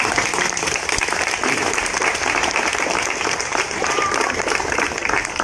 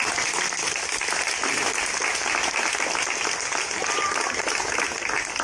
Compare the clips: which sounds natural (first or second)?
second